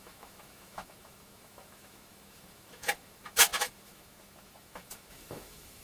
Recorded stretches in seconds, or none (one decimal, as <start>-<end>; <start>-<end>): none